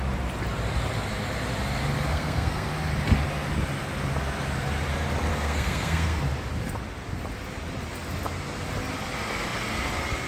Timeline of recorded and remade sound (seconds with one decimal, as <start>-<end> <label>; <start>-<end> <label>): 0.0-2.1 recorded; 2.1-2.7 remade; 2.7-5.3 recorded; 5.3-6.2 remade; 6.2-10.3 recorded